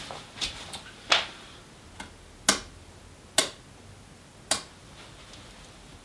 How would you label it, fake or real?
real